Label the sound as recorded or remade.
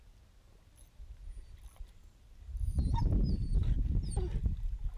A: recorded